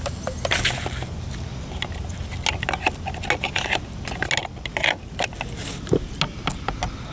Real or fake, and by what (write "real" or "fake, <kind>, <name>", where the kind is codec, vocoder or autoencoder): real